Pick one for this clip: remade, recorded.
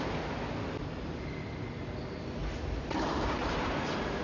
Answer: recorded